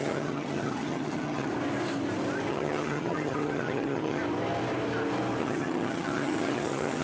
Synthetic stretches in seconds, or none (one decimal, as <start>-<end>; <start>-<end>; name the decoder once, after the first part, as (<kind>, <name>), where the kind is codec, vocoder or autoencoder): 0.0-1.5 (vocoder, HiFi-GAN); 2.5-4.2; 5.4-7.0